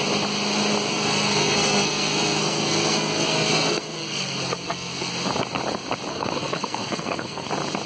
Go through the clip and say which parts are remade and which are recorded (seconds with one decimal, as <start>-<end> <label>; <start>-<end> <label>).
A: 0.0-0.9 recorded; 0.9-5.1 remade; 5.1-6.1 recorded; 6.1-7.5 remade; 7.5-7.9 recorded